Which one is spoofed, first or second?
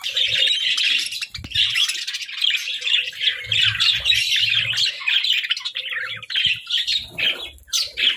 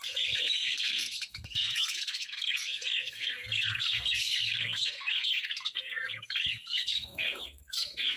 second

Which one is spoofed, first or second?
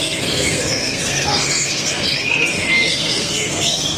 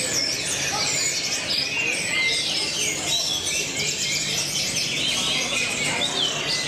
first